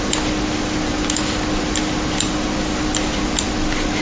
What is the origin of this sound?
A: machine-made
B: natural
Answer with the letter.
B